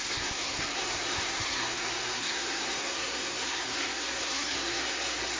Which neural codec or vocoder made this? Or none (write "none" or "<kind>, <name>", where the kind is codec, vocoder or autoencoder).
codec, SNAC